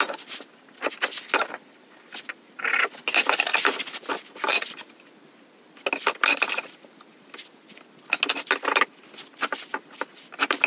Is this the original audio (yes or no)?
yes